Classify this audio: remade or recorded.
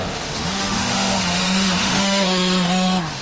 remade